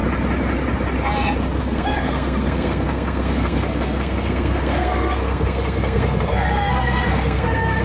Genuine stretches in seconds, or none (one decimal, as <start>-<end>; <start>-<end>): 0.0-1.6